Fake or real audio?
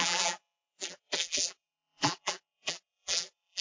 fake